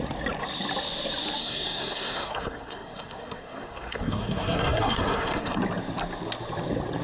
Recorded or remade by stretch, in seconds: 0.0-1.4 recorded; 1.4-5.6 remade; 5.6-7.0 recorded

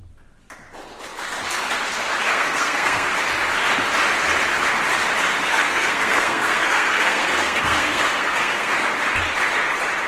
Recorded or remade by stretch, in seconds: 0.0-2.3 recorded; 2.3-3.1 remade; 3.1-5.3 recorded; 5.3-8.7 remade; 8.7-10.1 recorded